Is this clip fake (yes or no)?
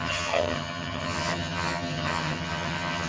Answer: yes